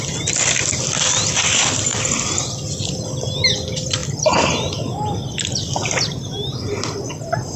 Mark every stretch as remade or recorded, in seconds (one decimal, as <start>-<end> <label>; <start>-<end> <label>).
0.0-4.0 recorded; 4.0-5.2 remade; 5.2-7.6 recorded